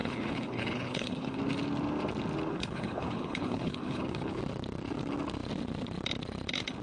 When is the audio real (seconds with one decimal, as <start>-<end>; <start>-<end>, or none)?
1.4-2.5; 4.4-6.8